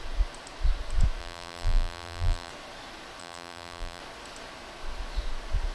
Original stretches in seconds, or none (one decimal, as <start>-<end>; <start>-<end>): 0.0-1.2; 2.5-3.2; 4.0-5.7